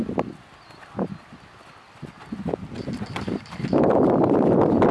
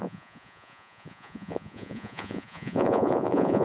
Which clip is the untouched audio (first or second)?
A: first